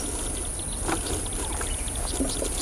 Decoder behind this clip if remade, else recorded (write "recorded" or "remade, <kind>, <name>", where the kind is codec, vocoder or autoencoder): recorded